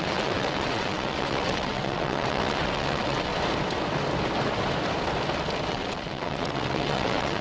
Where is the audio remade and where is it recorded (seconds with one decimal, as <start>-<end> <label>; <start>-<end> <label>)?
0.0-3.3 remade; 3.3-5.7 recorded; 5.7-7.4 remade